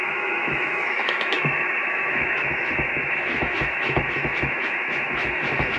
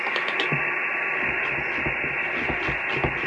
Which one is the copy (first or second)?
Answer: first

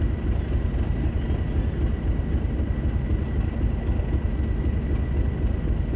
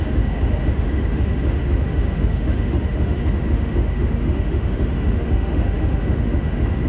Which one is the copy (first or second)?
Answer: second